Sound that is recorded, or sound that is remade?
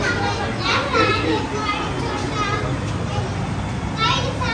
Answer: recorded